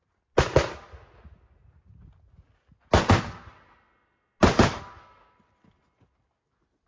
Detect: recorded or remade recorded